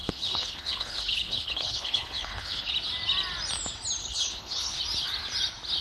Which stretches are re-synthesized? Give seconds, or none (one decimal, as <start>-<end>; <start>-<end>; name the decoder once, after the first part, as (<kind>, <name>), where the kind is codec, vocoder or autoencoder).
0.0-2.7 (codec, HILCodec); 4.0-4.8